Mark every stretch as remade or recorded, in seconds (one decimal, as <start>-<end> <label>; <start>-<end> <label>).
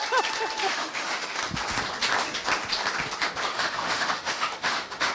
0.0-0.6 recorded; 0.6-1.4 remade; 1.4-3.5 recorded; 3.5-5.1 remade